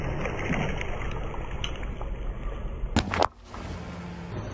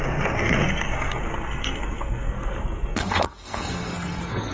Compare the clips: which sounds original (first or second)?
first